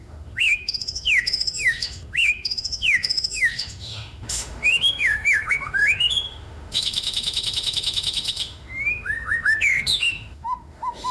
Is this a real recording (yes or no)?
no